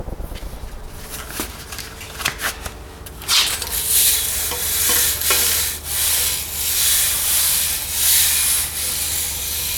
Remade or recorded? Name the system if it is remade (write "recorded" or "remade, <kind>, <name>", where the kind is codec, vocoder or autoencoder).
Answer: recorded